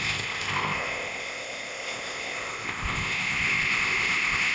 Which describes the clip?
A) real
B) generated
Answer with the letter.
B